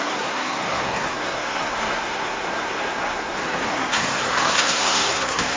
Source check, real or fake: fake